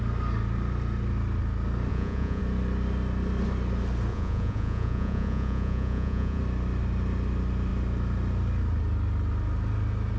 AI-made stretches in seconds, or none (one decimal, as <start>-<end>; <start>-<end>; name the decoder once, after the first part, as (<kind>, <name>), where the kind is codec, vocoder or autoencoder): 1.9-2.4 (vocoder, Vocos); 4.1-6.4